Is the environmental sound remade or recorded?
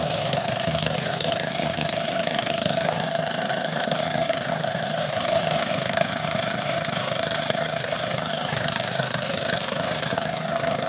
remade